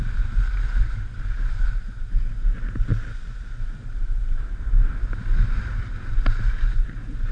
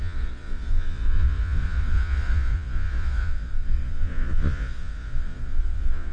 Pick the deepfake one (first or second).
second